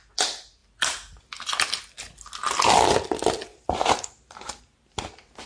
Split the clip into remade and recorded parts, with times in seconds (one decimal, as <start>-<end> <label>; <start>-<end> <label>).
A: 0.0-3.5 recorded; 3.5-4.6 remade; 4.6-5.5 recorded